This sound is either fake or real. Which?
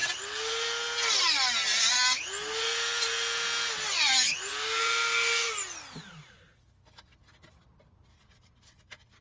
real